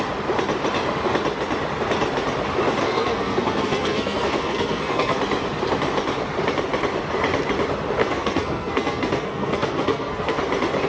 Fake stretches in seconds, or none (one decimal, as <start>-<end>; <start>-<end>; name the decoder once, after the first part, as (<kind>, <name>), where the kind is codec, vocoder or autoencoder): 2.8-5.2 (codec, SNAC); 8.0-10.4